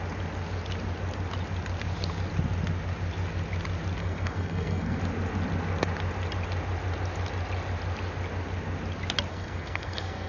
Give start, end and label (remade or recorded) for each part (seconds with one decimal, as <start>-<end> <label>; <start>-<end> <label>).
0.0-4.0 recorded; 4.0-5.0 remade; 5.0-9.3 recorded; 9.3-10.3 remade